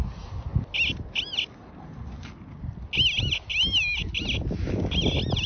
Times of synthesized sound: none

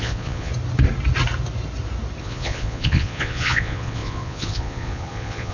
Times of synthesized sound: 0.0-0.5 (vocoder, Vocos); 2.2-5.5

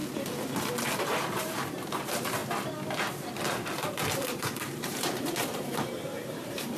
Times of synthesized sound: 1.0-2.4 (vocoder, BigVGAN v2); 4.4-6.8